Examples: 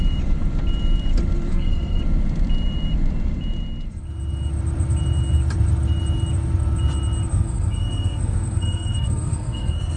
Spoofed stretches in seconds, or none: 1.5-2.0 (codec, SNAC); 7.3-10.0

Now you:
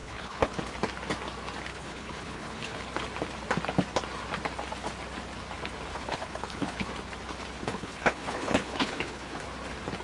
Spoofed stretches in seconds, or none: 0.0-0.6 (codec, HILCodec); 1.7-2.8; 5.9-6.9; 7.6-9.4

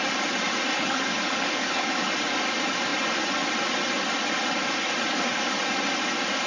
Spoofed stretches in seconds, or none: 0.7-2.1 (codec, HILCodec)

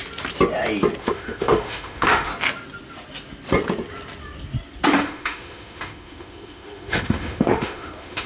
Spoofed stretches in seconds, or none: 1.0-2.3 (autoencoder, DAC-VAE); 5.0-8.3

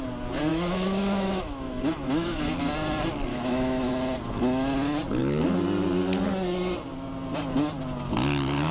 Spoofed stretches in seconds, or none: 0.5-2.4 (autoencoder, DAC-VAE); 3.3-3.9

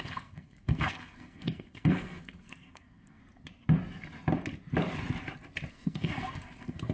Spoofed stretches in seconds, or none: 0.0-3.2 (codec, SNAC); 5.7-6.9